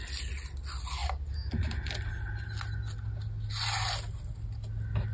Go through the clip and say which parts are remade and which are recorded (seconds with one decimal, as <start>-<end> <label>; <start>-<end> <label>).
0.0-5.1 recorded